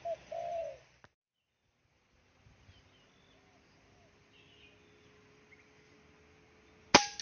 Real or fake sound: real